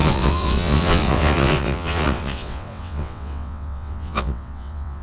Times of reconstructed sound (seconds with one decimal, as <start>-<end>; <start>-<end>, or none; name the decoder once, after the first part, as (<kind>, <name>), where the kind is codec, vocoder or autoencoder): 0.0-5.0 (vocoder, WaveNeXt)